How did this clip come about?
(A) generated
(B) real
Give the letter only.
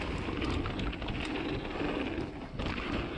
B